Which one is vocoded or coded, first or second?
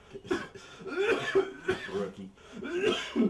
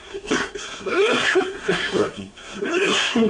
second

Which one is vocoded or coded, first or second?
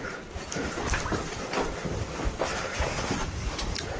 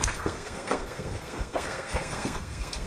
second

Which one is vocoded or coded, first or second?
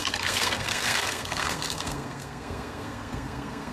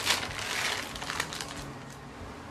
first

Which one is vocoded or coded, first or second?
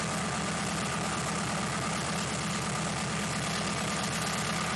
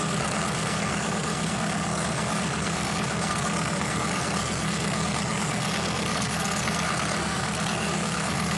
second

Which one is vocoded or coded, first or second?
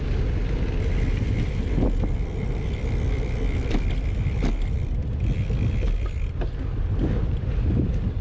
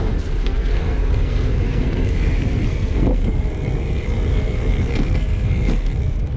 second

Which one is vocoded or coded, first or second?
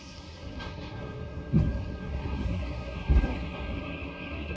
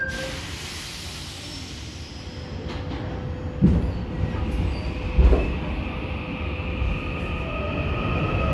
first